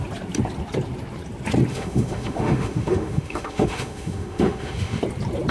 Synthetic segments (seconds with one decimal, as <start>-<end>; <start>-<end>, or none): 1.7-5.0